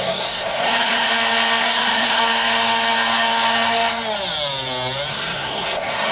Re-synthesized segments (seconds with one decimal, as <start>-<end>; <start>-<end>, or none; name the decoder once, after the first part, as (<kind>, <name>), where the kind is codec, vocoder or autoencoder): 0.0-1.1 (codec, SNAC); 1.6-2.2; 5.1-6.1